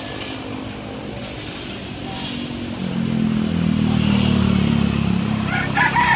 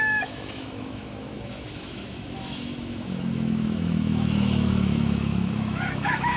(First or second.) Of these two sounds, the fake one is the second